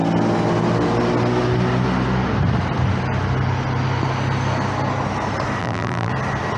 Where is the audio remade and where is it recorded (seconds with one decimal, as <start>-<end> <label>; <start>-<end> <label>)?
0.0-5.6 recorded; 5.6-6.1 remade; 6.1-6.6 recorded